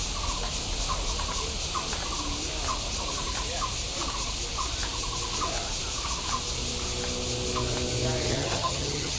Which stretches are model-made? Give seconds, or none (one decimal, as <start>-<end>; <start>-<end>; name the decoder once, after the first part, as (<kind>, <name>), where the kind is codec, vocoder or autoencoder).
8.3-9.2 (vocoder, HiFi-GAN)